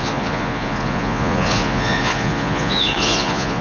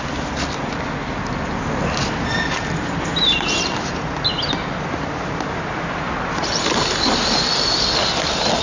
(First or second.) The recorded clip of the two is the second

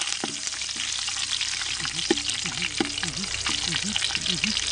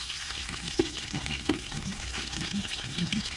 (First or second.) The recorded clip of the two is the first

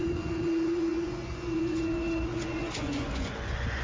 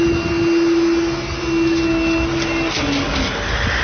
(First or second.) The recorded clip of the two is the second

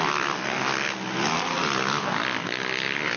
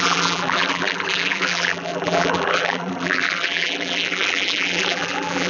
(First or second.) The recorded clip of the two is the first